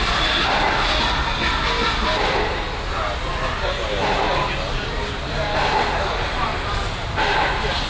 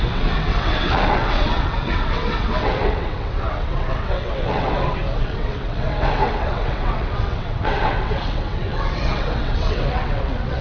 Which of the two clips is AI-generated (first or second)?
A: second